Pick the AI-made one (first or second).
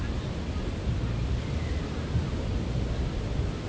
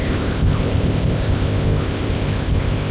second